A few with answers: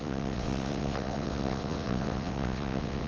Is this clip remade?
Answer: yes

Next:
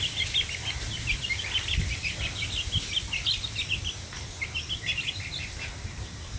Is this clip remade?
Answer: no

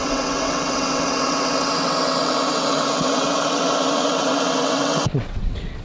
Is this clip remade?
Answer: yes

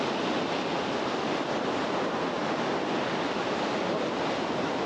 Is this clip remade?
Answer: no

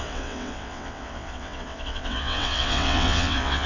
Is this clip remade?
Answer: yes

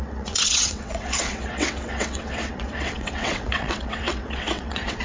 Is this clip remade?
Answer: yes